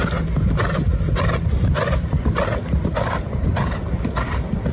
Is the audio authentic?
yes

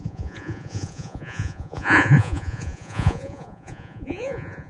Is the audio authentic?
no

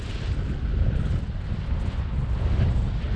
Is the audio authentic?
yes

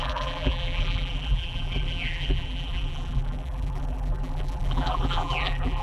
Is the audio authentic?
no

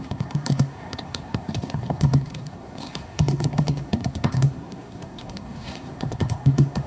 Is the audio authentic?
no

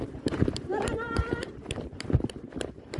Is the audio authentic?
no